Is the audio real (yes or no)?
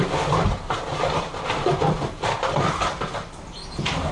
yes